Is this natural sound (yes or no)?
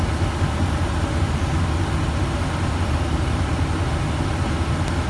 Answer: yes